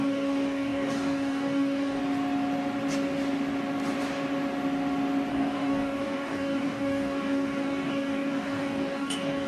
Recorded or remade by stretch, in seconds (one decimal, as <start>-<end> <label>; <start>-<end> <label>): 0.0-2.0 remade; 2.0-5.3 recorded; 5.3-9.5 remade

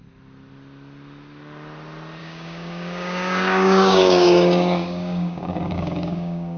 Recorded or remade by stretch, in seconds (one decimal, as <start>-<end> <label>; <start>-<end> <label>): 0.0-2.2 recorded; 2.2-6.6 remade

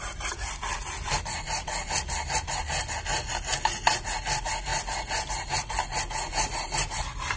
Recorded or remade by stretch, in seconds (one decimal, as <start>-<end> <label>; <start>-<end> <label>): 0.0-7.4 recorded